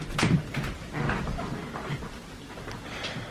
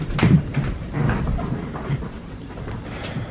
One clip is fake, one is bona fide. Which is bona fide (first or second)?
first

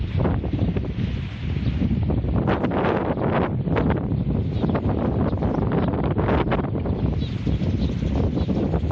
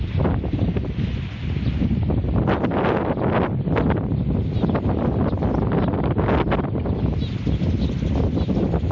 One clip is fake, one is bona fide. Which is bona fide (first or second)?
second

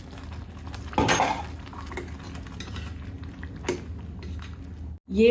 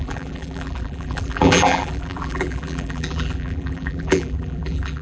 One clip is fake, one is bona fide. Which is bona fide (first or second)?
first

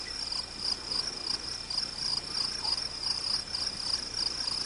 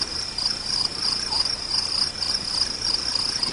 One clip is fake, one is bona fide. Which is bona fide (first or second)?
first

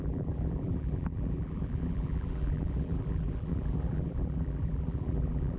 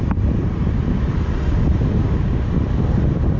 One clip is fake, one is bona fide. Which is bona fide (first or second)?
second